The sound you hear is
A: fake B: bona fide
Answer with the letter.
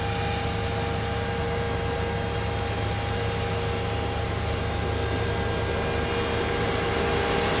B